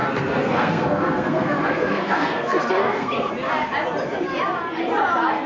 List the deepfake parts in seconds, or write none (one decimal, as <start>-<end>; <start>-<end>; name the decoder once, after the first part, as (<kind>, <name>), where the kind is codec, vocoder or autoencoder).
0.0-3.3 (codec, SNAC)